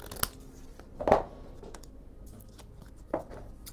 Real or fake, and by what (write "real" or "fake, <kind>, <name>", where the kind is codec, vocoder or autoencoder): real